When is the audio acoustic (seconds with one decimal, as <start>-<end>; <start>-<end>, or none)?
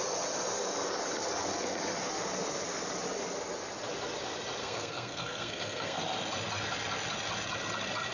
0.0-4.6; 6.0-8.1